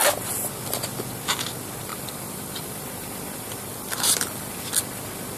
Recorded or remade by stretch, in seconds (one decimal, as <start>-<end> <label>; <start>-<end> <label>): 0.0-1.9 recorded; 1.9-4.7 remade; 4.7-5.4 recorded